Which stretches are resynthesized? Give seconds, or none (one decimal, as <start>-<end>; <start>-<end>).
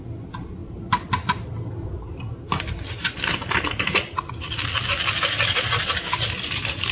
none